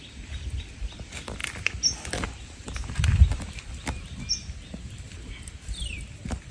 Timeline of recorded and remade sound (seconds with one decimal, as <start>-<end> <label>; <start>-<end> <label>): 0.0-6.5 recorded